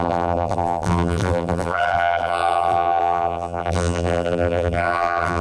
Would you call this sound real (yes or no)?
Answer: no